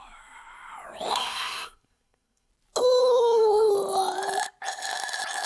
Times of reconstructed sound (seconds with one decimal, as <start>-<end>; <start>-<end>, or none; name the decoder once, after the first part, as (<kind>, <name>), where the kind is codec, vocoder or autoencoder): 1.1-2.5 (codec, SNAC); 3.0-3.7